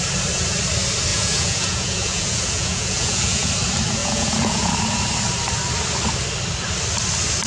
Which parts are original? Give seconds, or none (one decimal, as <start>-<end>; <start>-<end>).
0.0-1.1; 3.5-4.0; 4.7-7.5